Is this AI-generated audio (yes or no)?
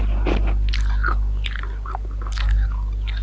no